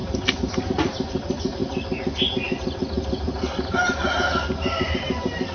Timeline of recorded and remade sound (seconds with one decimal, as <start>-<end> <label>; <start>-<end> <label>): 0.0-5.5 recorded